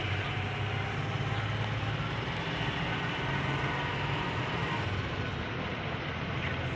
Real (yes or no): yes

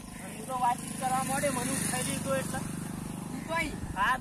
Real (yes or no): yes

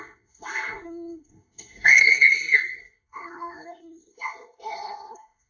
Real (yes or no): no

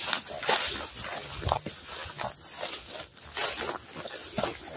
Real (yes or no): yes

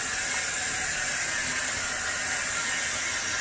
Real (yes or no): yes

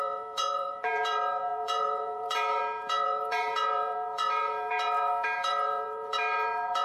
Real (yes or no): no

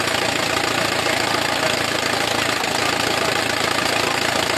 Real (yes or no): yes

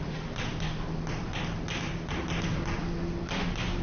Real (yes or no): yes